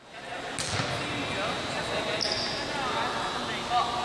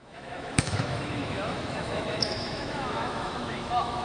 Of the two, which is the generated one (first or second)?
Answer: second